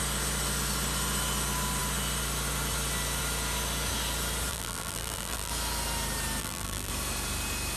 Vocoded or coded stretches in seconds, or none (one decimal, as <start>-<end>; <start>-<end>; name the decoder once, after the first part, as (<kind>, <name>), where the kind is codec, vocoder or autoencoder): 4.5-5.5 (vocoder, BigVGAN v2); 6.4-6.9

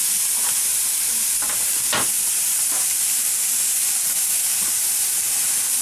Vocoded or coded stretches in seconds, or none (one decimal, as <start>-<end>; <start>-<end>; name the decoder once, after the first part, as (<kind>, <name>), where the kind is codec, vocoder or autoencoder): 0.7-4.2 (vocoder, BigVGAN v2)

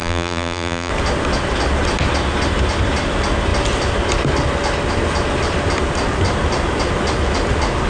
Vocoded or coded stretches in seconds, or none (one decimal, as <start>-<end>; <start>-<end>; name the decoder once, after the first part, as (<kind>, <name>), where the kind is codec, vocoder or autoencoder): 0.0-0.9 (vocoder, BigVGAN v2)

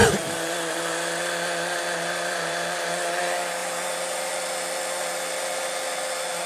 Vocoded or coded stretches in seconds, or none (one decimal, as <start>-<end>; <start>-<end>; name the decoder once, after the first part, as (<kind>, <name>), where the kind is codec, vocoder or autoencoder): 0.0-3.2 (vocoder, BigVGAN v2); 3.6-4.3

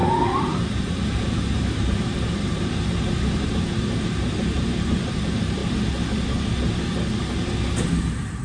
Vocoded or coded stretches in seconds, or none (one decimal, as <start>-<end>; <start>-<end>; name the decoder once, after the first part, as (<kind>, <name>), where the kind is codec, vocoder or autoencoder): 0.0-5.6 (vocoder, BigVGAN v2); 8.0-8.4

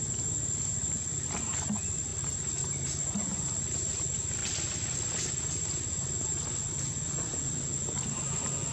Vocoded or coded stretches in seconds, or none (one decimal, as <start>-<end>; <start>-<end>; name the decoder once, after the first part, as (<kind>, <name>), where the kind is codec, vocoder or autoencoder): 2.1-3.0 (vocoder, BigVGAN v2)